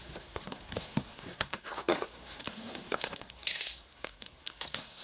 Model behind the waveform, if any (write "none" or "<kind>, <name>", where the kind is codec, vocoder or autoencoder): codec, SNAC